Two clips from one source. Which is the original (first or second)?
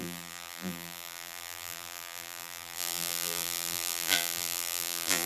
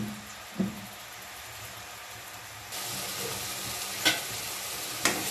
second